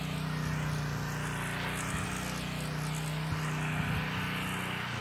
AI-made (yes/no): no